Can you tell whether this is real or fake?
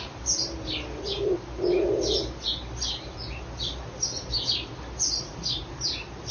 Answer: real